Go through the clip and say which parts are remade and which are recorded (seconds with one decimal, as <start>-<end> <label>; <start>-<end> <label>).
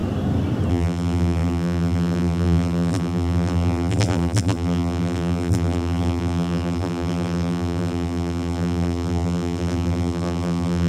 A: 0.0-0.7 recorded; 0.7-10.9 remade